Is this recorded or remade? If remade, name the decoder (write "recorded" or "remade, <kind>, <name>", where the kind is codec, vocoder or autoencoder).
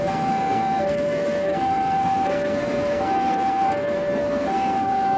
remade, codec, SNAC